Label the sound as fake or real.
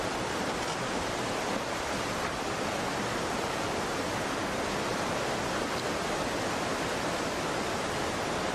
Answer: real